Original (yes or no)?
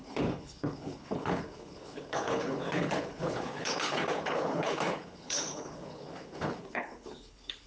no